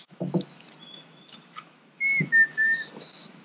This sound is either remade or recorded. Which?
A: remade